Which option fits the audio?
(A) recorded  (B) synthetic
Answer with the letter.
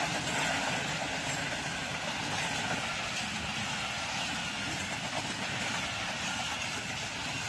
A